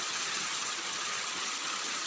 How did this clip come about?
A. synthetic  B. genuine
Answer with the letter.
A